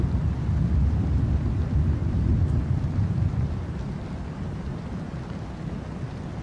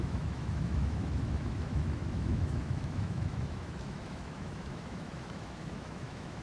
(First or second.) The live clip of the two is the first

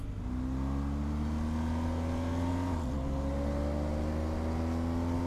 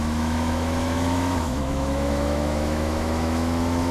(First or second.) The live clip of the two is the first